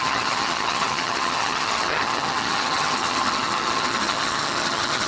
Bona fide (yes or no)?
no